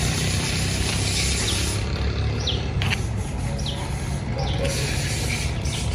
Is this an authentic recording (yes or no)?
yes